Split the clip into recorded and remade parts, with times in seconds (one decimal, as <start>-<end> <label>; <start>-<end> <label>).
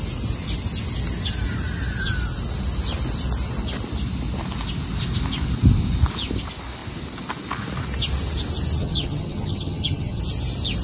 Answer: 0.0-8.8 recorded; 8.8-10.2 remade; 10.2-10.8 recorded